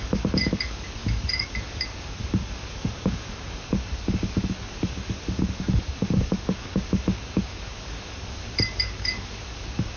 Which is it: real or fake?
fake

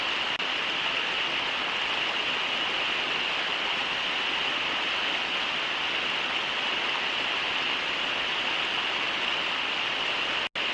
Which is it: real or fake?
real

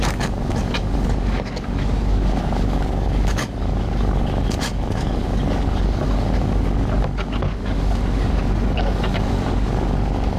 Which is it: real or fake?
fake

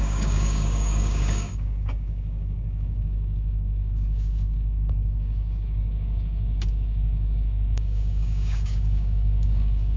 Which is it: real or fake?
fake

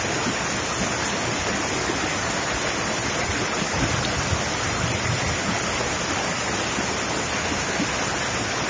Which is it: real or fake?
real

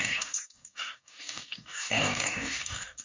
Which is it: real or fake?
fake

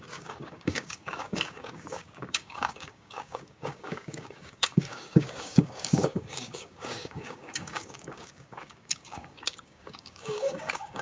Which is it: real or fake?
fake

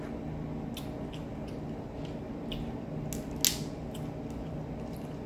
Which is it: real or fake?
real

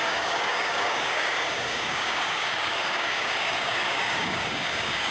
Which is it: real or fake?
fake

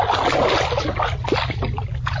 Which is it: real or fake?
real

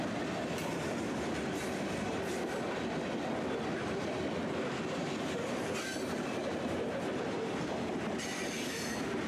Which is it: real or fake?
real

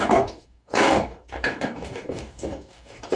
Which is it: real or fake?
fake